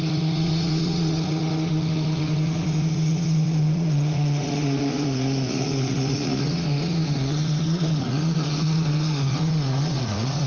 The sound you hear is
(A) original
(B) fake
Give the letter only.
B